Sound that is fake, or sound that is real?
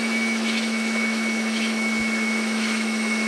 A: fake